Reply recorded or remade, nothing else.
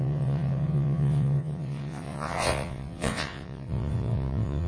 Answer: remade